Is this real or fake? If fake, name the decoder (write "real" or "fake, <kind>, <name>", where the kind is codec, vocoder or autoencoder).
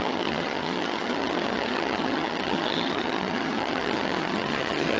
fake, vocoder, HiFi-GAN